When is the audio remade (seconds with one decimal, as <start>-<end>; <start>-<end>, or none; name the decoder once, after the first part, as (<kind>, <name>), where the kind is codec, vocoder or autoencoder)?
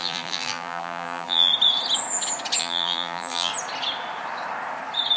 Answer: 0.0-1.5 (vocoder, BigVGAN v2); 2.6-3.5